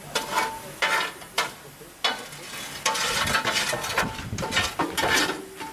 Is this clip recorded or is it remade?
recorded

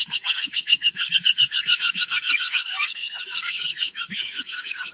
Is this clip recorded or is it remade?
remade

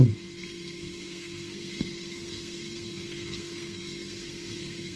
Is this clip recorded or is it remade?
remade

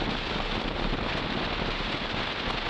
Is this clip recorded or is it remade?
recorded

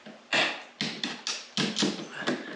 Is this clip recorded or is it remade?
recorded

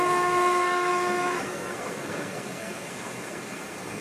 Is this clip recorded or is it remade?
remade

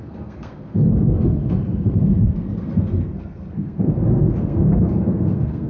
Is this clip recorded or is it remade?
remade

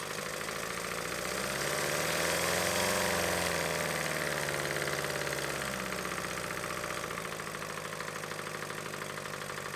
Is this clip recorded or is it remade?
recorded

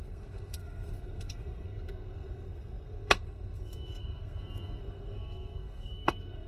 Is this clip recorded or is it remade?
remade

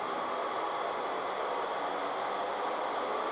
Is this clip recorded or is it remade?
recorded